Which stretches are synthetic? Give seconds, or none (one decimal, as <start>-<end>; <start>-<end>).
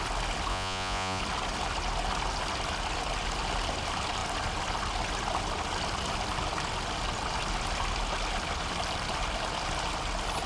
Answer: 0.5-1.2